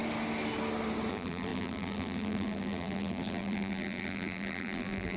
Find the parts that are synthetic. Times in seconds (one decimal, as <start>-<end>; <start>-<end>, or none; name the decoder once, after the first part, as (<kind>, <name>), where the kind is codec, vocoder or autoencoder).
1.1-5.2 (vocoder, BigVGAN v2)